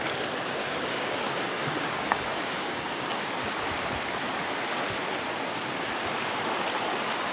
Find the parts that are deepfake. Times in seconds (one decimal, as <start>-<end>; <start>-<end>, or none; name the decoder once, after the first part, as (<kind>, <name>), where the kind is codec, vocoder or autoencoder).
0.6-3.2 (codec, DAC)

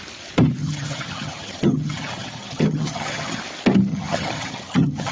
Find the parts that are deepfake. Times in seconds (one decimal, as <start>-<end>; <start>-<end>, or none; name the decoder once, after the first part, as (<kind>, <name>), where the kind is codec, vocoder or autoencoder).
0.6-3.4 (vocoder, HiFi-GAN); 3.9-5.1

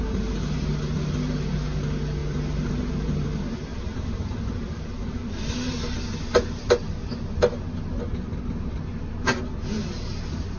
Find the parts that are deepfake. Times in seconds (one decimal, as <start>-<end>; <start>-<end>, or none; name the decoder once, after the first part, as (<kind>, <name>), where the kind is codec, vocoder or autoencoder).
3.7-4.8 (vocoder, BigVGAN v2)

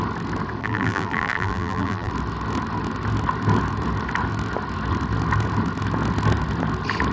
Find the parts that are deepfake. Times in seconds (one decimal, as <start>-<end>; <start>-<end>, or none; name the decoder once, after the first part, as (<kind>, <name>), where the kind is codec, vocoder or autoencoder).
0.6-2.1 (vocoder, BigVGAN v2)

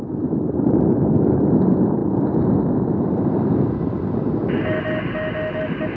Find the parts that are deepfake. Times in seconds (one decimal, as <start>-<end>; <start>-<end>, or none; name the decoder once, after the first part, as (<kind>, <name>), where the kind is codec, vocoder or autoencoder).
none

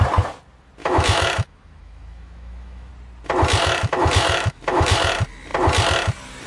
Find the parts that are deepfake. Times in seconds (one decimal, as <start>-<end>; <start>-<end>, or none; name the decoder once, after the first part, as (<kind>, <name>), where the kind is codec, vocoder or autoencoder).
0.8-2.9 (autoencoder, DAC-VAE); 3.6-5.1

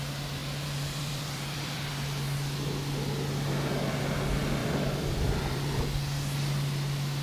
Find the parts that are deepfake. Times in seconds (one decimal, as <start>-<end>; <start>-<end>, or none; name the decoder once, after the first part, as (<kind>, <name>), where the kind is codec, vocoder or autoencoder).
0.4-1.9 (vocoder, BigVGAN v2); 4.6-6.0

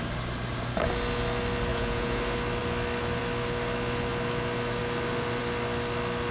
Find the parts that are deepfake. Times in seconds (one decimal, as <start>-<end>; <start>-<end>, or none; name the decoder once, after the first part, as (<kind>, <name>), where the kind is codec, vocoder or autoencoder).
1.7-2.2 (vocoder, Vocos)